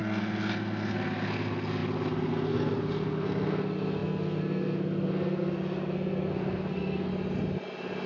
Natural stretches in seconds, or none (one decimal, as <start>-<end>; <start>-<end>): 7.1-8.1